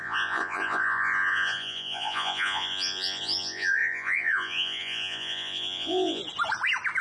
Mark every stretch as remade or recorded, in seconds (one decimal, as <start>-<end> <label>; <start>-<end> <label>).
0.0-6.2 remade; 6.2-7.0 recorded